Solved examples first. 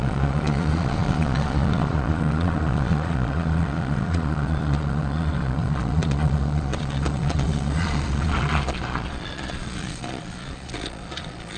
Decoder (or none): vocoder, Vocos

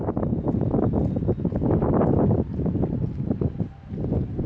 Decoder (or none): none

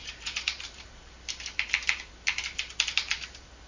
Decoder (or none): vocoder, BigVGAN v2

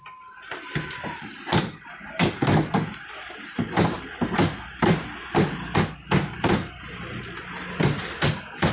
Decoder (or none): none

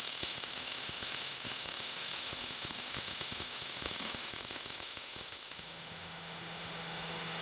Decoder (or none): autoencoder, DAC-VAE